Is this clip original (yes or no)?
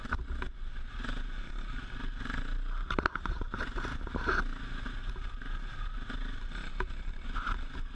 yes